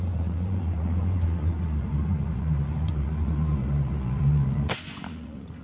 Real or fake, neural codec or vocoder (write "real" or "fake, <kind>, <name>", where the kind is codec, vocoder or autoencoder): fake, vocoder, Vocos